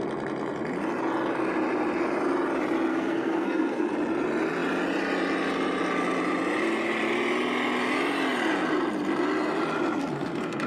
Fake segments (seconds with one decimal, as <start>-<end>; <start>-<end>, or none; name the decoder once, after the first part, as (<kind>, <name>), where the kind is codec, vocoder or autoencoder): 2.9-3.9 (codec, SNAC); 10.0-10.7